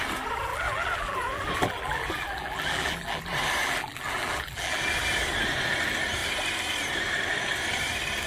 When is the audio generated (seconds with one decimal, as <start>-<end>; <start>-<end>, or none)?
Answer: 0.5-3.2; 3.6-4.8